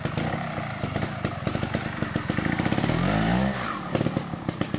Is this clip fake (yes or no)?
no